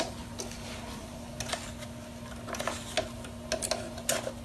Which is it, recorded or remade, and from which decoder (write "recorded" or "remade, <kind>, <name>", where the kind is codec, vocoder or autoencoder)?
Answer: recorded